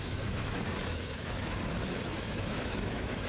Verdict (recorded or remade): remade